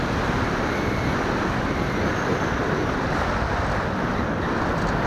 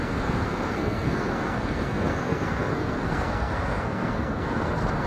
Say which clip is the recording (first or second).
first